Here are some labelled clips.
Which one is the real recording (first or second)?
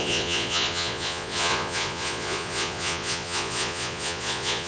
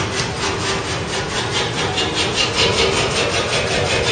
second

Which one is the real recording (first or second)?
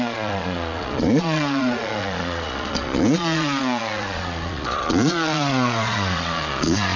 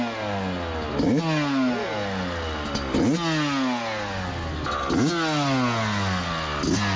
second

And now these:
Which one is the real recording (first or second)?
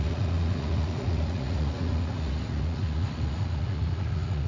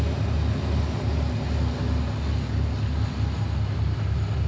second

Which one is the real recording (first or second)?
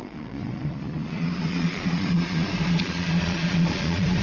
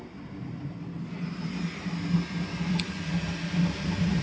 second